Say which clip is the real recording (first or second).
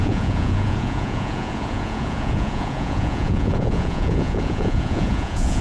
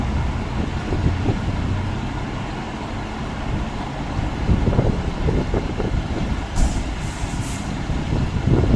second